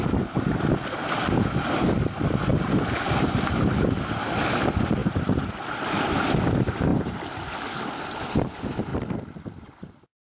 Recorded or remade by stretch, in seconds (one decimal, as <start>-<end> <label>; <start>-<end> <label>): 0.0-2.5 recorded; 2.5-3.5 remade; 3.5-5.0 recorded; 5.0-5.6 remade; 5.6-6.9 recorded; 6.9-7.5 remade; 7.5-10.3 recorded